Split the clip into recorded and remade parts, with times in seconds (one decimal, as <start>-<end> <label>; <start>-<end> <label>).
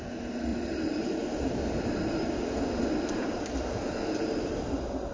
0.0-0.5 recorded; 0.5-2.3 remade; 2.3-3.2 recorded; 3.2-3.7 remade; 3.7-5.1 recorded